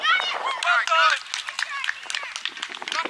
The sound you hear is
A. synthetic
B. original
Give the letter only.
B